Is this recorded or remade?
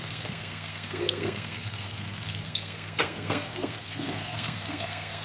remade